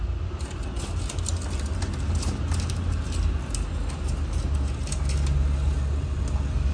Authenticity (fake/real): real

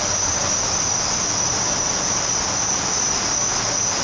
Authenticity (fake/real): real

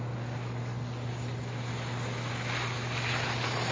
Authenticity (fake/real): real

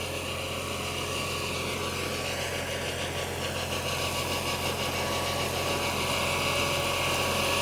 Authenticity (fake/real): real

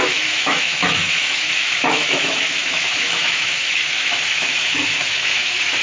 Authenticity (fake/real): fake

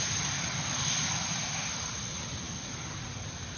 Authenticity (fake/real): real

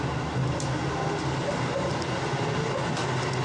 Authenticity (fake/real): real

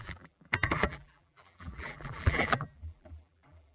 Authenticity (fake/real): fake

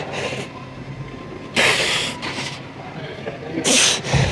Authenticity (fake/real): real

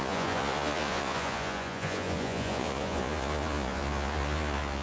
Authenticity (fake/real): fake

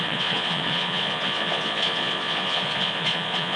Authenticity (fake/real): fake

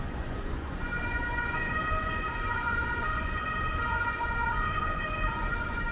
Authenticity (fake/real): fake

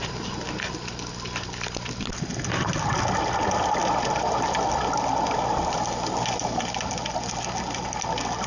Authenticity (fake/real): real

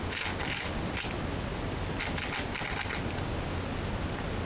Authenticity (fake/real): real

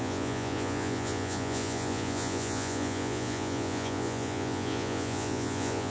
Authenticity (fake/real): fake